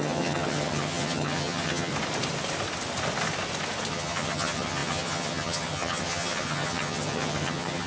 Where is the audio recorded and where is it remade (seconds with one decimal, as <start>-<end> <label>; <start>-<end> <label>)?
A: 0.0-1.9 remade; 1.9-3.9 recorded; 3.9-7.9 remade